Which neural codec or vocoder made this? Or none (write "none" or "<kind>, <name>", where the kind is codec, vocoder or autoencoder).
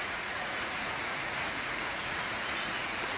vocoder, Vocos